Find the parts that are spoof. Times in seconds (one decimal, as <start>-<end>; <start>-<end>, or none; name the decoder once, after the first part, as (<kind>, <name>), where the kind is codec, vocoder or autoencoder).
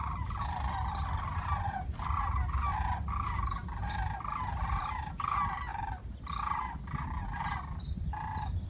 none